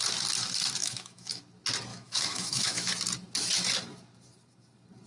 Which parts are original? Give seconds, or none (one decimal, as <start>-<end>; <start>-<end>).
0.0-0.8; 1.4-1.9; 2.9-5.1